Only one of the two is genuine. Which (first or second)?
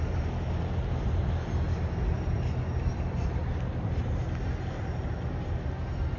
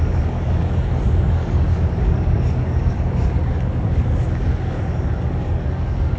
first